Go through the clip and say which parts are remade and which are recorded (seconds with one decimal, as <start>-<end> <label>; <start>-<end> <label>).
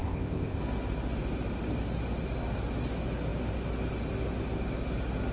0.0-0.6 remade; 0.6-5.3 recorded